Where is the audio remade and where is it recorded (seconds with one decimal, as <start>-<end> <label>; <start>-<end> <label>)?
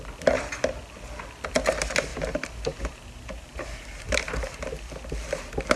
0.0-2.1 recorded; 2.1-4.4 remade; 4.4-5.8 recorded